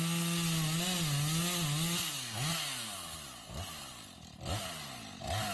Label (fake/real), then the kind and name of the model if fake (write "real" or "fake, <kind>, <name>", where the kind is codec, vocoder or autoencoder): real